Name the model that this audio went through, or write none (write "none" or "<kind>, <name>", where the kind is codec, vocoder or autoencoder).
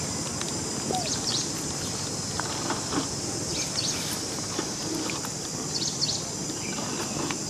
none